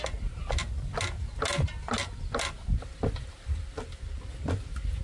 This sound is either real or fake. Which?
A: real